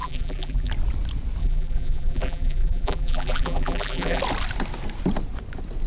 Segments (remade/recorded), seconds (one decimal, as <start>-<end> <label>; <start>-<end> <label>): 0.0-0.7 remade; 0.7-1.4 recorded; 1.4-4.2 remade; 4.2-5.9 recorded